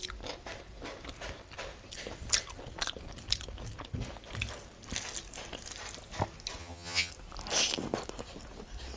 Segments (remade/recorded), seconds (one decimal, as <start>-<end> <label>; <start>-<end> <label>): 0.0-6.6 recorded; 6.6-7.1 remade; 7.1-9.0 recorded